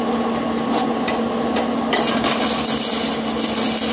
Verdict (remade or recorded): recorded